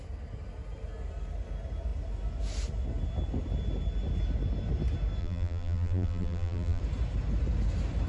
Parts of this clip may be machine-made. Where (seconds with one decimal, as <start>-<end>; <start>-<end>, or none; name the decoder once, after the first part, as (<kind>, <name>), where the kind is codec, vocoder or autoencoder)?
5.2-6.8 (vocoder, BigVGAN v2)